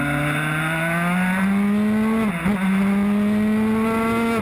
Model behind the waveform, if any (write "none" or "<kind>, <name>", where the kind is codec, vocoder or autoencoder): none